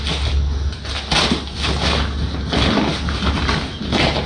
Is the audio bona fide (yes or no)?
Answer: yes